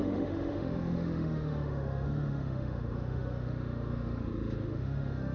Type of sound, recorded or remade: remade